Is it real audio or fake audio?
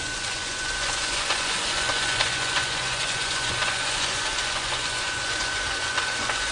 fake